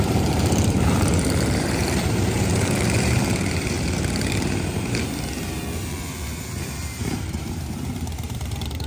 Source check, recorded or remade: remade